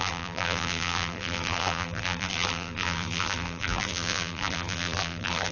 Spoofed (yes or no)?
yes